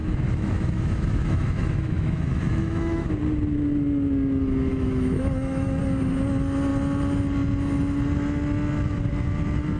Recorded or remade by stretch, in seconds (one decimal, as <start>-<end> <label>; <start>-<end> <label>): 0.0-3.1 remade; 3.1-4.7 recorded; 4.7-5.8 remade; 5.8-9.8 recorded